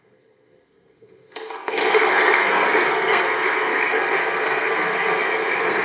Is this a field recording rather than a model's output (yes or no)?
no